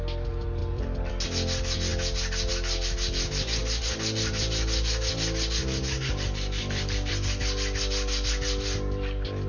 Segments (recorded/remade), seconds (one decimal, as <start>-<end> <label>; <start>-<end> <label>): 0.0-0.6 recorded; 0.6-1.1 remade; 1.1-3.6 recorded; 3.6-7.4 remade; 7.4-9.5 recorded